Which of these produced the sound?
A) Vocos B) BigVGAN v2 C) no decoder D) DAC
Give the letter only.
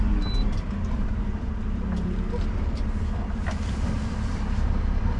B